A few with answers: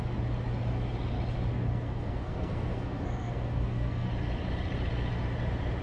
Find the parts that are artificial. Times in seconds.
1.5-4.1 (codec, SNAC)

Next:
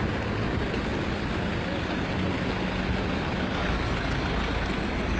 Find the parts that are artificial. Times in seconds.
none

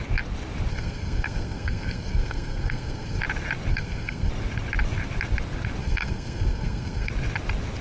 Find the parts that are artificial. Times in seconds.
0.7-3.2 (codec, SNAC); 3.7-4.3; 5.8-7.1

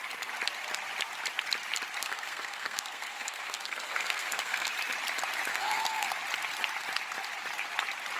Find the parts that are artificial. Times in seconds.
2.0-4.7 (codec, SNAC); 5.5-6.1

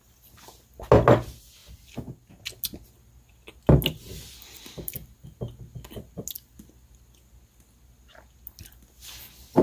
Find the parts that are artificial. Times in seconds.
none

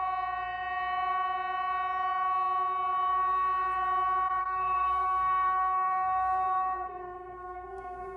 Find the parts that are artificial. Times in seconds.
4.4-8.2 (codec, SNAC)